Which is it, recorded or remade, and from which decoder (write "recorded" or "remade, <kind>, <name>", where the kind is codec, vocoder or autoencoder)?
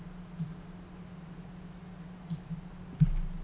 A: recorded